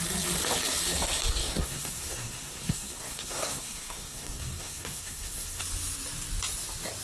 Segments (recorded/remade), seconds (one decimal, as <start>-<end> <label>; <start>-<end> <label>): 0.0-1.4 recorded; 1.4-5.6 remade; 5.6-7.0 recorded